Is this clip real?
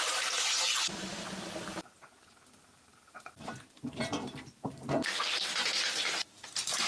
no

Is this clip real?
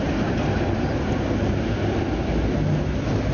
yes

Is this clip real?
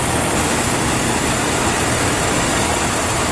yes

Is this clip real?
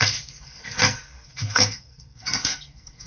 no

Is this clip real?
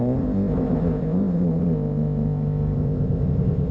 no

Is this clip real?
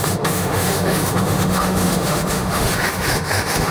no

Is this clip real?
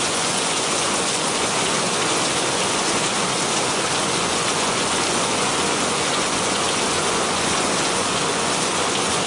no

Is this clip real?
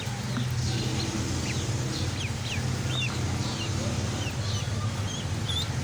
yes